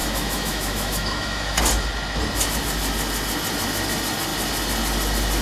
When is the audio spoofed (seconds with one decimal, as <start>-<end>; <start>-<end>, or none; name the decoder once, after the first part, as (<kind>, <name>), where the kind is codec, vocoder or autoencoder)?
0.0-1.6 (autoencoder, DAC-VAE)